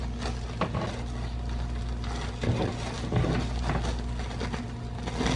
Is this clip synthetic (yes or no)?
no